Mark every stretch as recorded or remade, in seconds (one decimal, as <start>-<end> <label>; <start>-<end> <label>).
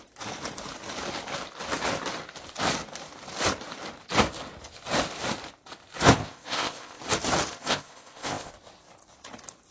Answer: 0.0-6.2 recorded; 6.2-7.0 remade; 7.0-7.5 recorded; 7.5-8.5 remade; 8.5-9.7 recorded